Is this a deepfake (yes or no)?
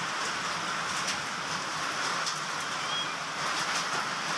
no